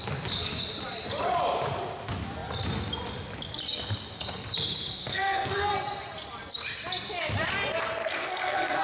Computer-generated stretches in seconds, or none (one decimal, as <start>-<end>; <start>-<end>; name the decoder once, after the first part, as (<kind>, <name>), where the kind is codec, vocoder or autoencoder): 5.0-5.7 (codec, SNAC); 8.0-8.8